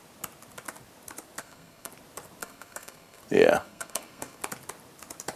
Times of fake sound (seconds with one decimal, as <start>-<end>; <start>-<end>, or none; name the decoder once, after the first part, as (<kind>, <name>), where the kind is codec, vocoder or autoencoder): 1.4-1.9 (codec, SNAC); 2.4-3.2; 3.6-4.4

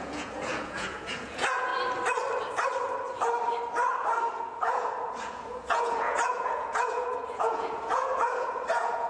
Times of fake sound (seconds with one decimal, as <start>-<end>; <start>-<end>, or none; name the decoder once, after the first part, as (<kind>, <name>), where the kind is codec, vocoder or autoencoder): 0.0-1.7 (vocoder, Vocos); 4.4-9.1

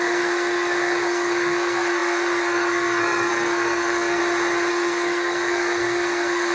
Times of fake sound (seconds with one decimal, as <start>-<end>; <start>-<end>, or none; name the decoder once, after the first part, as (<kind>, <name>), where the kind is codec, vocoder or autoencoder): 0.0-4.2 (codec, SNAC); 4.7-6.5

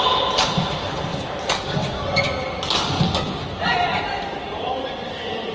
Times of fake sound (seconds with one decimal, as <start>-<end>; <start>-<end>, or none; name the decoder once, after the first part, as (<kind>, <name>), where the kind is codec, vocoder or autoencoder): 0.0-1.1 (vocoder, BigVGAN v2); 4.4-5.5

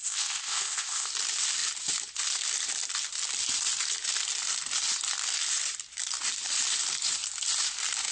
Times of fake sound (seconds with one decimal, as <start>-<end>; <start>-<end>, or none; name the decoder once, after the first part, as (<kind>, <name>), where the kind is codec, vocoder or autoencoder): 0.0-1.1 (codec, ZipCodec)